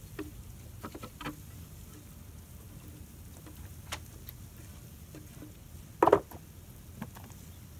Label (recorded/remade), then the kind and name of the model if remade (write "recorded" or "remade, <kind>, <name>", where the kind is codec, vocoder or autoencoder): recorded